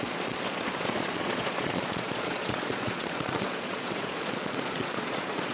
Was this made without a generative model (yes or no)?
no